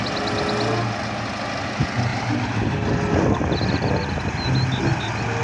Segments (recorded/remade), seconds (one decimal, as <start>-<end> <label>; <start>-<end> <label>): 0.0-5.4 recorded